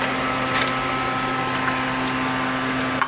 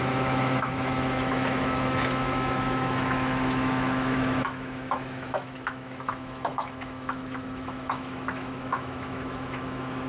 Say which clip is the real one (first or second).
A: first